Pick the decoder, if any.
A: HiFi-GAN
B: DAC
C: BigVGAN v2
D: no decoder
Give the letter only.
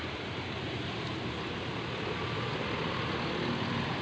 D